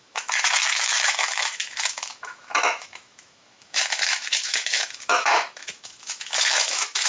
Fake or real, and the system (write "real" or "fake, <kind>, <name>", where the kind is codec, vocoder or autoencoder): fake, autoencoder, DAC-VAE